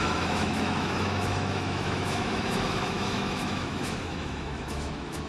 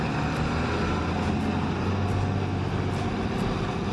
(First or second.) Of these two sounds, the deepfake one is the first